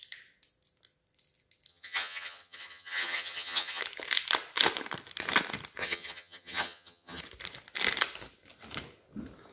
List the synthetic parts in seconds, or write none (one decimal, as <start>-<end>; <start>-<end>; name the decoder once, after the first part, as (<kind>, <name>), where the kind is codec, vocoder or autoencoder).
1.7-3.8 (vocoder, HiFi-GAN); 5.8-7.2